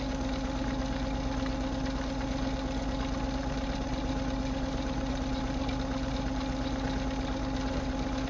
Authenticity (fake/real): real